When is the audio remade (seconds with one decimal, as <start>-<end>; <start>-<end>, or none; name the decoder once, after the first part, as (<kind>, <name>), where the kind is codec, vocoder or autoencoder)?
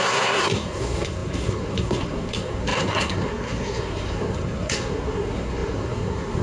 0.0-6.4 (codec, SNAC)